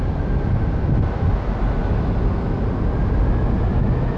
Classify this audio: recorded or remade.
recorded